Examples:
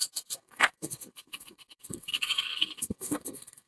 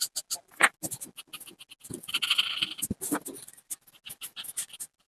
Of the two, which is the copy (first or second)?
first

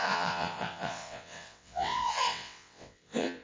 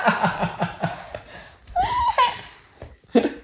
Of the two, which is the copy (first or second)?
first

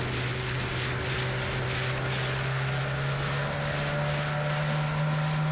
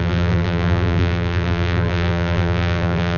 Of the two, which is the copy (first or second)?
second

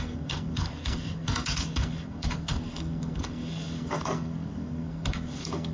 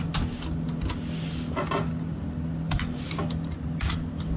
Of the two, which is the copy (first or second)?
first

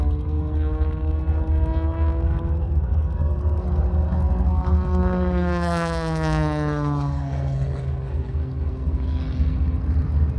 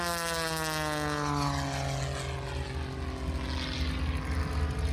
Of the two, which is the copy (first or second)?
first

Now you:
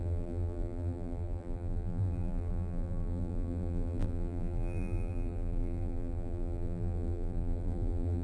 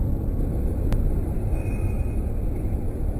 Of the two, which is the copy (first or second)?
first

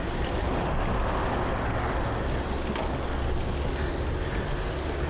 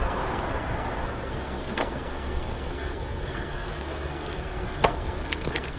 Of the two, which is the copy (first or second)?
second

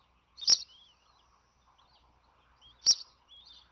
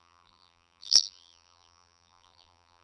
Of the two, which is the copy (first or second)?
second